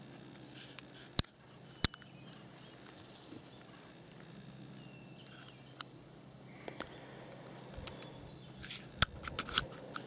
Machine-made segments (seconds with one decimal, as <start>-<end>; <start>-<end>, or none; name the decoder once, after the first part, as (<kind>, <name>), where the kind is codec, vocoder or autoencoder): none